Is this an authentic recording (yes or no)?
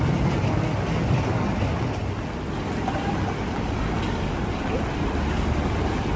yes